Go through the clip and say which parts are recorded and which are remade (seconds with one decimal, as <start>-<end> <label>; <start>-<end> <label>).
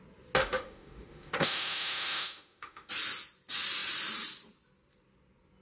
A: 0.0-0.4 recorded; 0.4-2.9 remade; 2.9-5.6 recorded